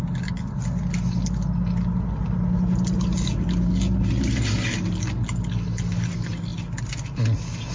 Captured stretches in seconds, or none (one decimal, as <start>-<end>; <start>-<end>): 0.0-7.7